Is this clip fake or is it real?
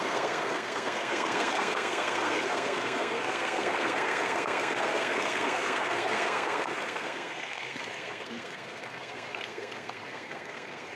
fake